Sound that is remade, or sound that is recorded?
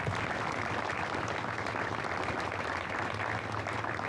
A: recorded